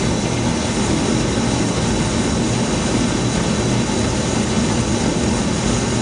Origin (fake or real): real